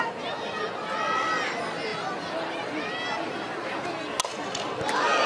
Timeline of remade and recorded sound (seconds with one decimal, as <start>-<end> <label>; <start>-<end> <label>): 0.0-1.9 recorded; 1.9-3.7 remade; 3.7-5.3 recorded